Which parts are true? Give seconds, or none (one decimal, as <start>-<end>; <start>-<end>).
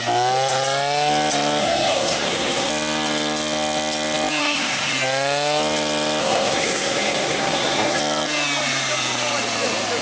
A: 0.0-1.6; 2.7-4.4; 4.9-6.2; 8.0-10.0